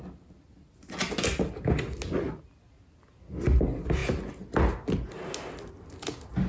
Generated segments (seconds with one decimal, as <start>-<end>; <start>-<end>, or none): none